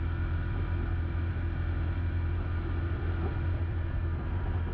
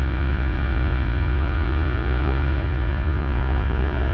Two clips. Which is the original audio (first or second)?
first